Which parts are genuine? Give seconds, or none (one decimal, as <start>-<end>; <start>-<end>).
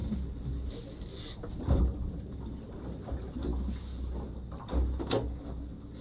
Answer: 0.0-6.0